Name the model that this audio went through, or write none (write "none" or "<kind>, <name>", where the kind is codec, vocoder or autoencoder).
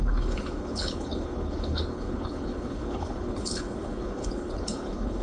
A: codec, HILCodec